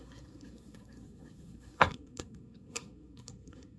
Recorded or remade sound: remade